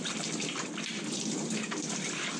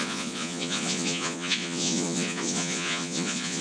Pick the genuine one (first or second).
first